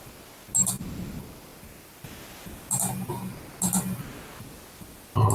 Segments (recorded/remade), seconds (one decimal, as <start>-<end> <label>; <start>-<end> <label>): 0.0-5.3 recorded